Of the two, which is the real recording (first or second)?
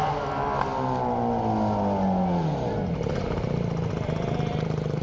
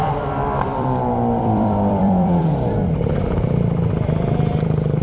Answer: first